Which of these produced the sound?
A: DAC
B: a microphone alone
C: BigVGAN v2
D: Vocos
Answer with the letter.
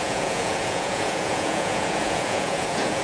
D